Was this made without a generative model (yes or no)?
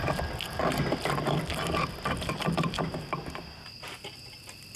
yes